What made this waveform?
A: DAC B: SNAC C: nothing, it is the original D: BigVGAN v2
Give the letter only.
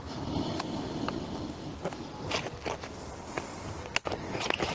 C